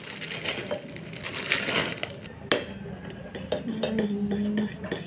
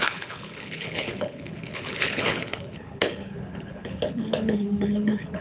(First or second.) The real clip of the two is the first